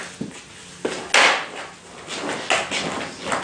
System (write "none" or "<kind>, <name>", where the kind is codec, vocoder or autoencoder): none